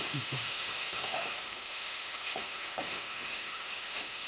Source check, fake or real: fake